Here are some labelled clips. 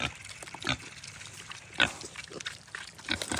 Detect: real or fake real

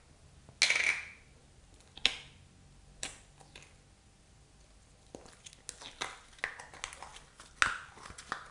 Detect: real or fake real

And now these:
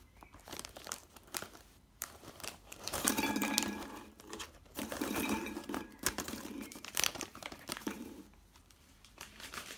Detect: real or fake fake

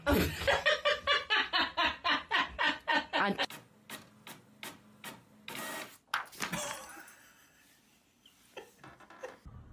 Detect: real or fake real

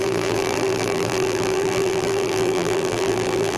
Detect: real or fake fake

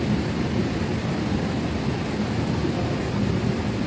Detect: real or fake real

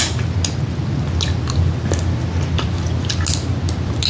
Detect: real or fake real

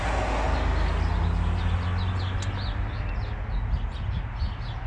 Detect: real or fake real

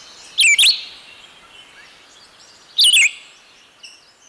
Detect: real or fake real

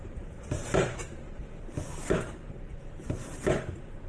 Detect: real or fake fake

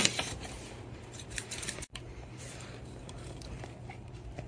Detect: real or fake fake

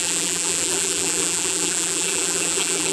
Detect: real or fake fake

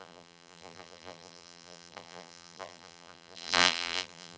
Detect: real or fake fake